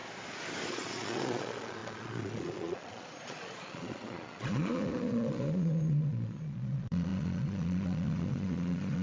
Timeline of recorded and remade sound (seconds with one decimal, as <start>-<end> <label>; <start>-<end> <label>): 0.0-0.7 recorded; 0.7-9.0 remade